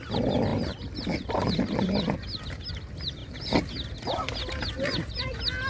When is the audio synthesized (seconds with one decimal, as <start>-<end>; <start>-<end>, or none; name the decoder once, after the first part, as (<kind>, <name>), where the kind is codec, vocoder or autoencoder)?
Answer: none

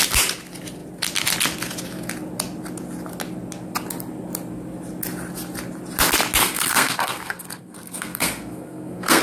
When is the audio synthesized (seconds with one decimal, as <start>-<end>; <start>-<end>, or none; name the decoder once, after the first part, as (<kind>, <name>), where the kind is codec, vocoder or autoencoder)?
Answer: 6.4-9.2 (codec, SNAC)

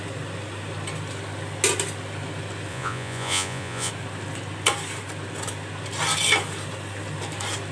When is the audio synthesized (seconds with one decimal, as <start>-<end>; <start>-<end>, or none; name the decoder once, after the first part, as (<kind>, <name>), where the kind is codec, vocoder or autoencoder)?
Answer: 2.7-3.9 (vocoder, Vocos)

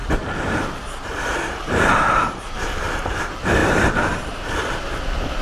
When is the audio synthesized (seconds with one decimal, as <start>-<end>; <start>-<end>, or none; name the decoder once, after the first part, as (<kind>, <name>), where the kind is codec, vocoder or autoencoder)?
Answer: 0.0-2.9 (vocoder, BigVGAN v2); 3.6-4.7

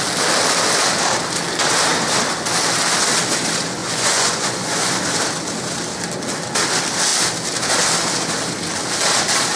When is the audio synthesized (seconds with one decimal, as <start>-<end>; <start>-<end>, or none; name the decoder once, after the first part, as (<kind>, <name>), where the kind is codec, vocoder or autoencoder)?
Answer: 3.8-5.0 (vocoder, Vocos)